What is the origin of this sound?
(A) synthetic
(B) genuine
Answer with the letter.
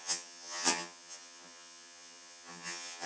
A